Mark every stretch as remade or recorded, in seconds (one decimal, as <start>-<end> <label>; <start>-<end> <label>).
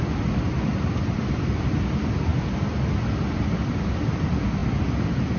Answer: 0.0-5.4 recorded